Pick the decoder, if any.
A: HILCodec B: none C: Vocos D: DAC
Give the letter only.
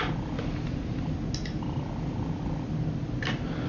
B